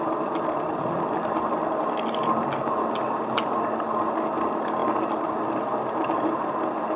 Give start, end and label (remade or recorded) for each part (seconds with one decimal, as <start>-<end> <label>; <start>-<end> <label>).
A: 0.0-4.8 recorded; 4.8-5.3 remade; 5.3-7.0 recorded